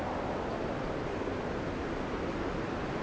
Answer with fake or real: real